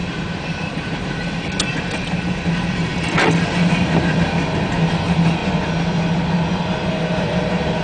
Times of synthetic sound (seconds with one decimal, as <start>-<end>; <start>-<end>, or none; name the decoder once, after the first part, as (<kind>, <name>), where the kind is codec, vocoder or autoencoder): 0.0-5.4 (vocoder, BigVGAN v2); 6.9-7.8